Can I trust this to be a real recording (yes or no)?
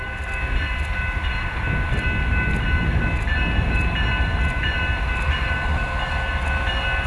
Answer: yes